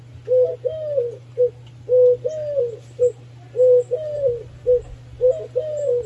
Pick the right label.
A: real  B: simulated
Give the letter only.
A